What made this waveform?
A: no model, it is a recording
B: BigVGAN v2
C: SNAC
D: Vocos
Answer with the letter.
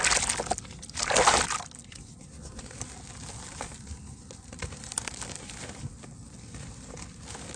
A